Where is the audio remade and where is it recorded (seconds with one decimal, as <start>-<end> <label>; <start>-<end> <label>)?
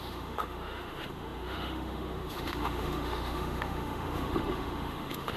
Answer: 0.0-5.4 remade